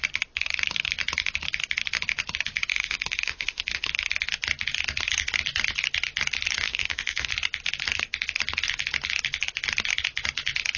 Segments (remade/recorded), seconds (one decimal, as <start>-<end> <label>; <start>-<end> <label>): 0.0-2.7 recorded; 2.7-3.9 remade; 3.9-6.6 recorded; 6.6-7.3 remade; 7.3-10.8 recorded